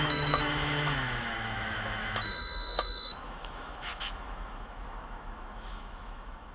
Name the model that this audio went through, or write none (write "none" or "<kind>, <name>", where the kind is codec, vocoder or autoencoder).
autoencoder, DAC-VAE